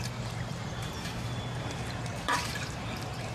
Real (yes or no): no